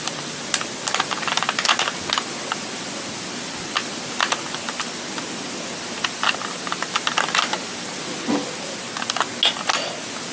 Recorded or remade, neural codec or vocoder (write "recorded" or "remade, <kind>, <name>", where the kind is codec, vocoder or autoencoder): recorded